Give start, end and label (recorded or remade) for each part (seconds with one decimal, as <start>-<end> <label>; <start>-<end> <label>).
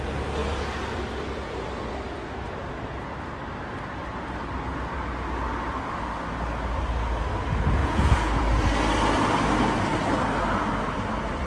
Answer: 0.0-7.8 recorded; 7.8-8.4 remade; 8.4-11.5 recorded